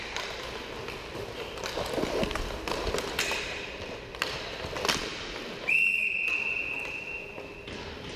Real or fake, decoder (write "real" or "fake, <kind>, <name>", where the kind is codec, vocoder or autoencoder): real